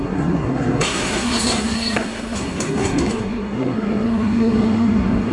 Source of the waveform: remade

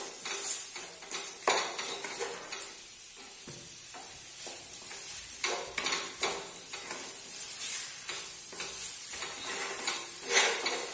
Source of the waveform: recorded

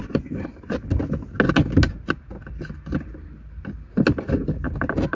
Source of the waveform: recorded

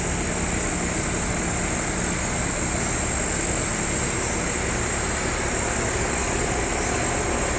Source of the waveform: recorded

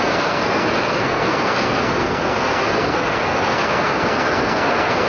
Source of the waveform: remade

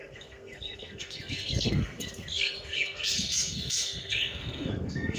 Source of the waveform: remade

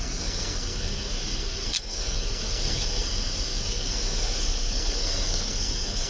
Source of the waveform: remade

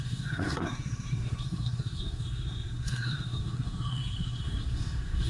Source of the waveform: remade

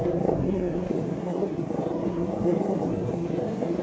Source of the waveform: remade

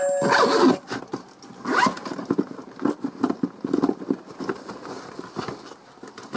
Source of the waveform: recorded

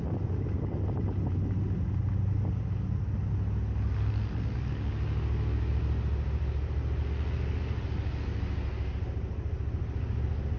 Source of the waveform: recorded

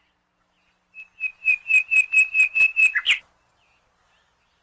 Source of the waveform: recorded